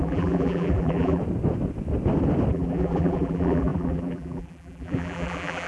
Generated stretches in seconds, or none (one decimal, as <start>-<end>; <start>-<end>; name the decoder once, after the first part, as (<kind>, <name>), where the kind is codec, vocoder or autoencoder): 0.0-1.2 (vocoder, BigVGAN v2); 2.5-5.7